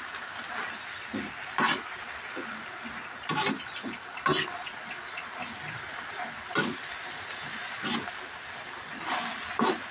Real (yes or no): yes